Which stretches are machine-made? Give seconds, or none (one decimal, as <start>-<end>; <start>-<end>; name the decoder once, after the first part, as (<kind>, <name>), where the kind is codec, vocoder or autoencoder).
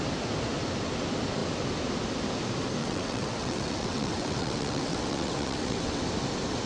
2.8-6.0 (vocoder, WaveNeXt)